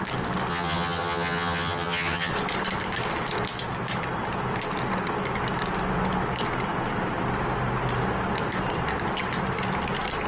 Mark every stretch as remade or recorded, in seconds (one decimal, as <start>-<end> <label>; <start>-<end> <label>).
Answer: 0.0-0.5 recorded; 0.5-2.3 remade; 2.3-10.3 recorded